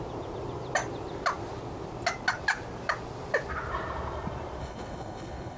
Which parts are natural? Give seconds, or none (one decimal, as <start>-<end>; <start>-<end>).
0.0-4.6